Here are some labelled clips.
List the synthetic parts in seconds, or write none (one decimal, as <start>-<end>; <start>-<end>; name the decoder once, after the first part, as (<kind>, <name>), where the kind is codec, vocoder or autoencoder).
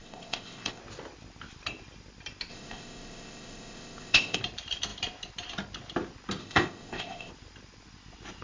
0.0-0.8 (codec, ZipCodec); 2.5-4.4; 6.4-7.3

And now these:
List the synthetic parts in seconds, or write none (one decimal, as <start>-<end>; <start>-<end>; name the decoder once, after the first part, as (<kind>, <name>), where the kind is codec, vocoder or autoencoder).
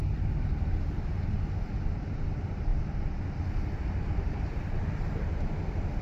none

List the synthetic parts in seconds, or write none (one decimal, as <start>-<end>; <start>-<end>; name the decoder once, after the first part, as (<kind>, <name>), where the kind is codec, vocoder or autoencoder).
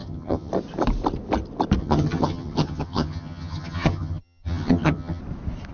0.0-0.5 (vocoder, HiFi-GAN); 1.8-5.2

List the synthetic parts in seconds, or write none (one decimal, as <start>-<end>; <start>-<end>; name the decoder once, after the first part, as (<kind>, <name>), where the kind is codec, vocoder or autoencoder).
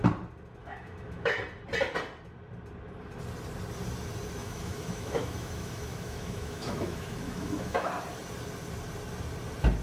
0.6-1.4 (autoencoder, DAC-VAE); 4.4-7.9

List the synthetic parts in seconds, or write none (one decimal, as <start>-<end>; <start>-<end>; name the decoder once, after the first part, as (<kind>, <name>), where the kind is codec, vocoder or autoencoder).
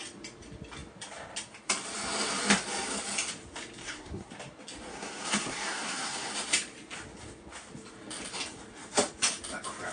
3.8-4.3 (codec, SNAC); 4.9-6.3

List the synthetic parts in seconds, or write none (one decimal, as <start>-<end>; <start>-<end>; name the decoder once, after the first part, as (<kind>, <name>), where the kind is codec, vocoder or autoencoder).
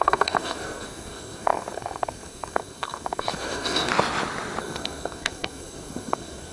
0.0-3.9 (codec, SNAC); 4.6-6.5